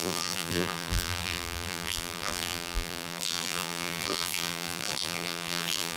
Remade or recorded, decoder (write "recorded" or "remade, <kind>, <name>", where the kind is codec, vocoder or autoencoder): remade, vocoder, BigVGAN v2